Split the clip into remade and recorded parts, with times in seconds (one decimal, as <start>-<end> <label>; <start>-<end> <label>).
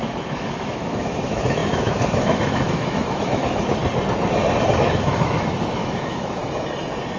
0.0-3.8 remade; 3.8-4.8 recorded; 4.8-6.4 remade; 6.4-7.2 recorded